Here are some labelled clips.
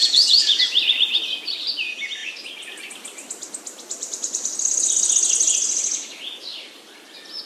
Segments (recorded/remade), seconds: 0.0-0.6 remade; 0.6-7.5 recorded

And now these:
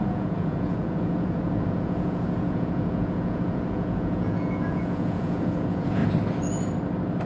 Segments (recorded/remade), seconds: 0.0-6.0 remade; 6.0-7.3 recorded

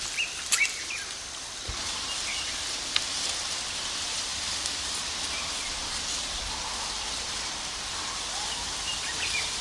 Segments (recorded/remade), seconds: 0.0-9.6 recorded

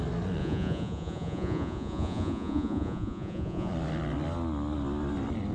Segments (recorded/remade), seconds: 0.0-0.4 recorded; 0.4-3.7 remade; 3.7-5.5 recorded

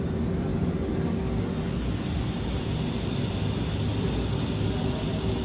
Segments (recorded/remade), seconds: 0.0-5.4 recorded

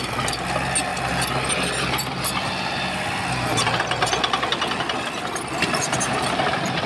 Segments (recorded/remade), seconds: 0.0-6.9 recorded

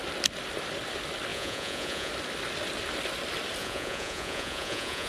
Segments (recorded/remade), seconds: 0.0-1.3 recorded; 1.3-2.1 remade; 2.1-3.6 recorded; 3.6-5.1 remade